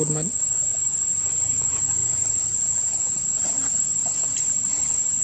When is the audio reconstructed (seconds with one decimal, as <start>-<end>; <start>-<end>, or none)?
0.0-4.0